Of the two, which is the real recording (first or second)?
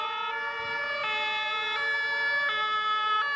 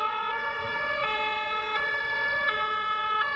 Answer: first